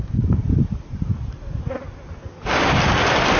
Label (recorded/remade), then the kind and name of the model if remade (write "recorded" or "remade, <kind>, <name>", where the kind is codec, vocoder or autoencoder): recorded